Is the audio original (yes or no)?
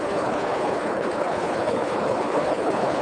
no